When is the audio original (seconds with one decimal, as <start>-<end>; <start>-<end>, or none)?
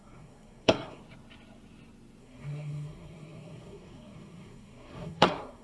1.0-2.2